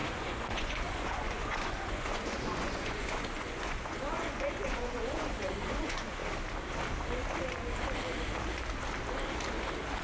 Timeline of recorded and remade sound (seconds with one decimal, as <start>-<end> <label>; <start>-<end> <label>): 0.0-6.2 remade; 6.2-10.0 recorded